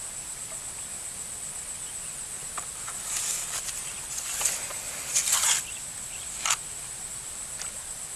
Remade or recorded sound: recorded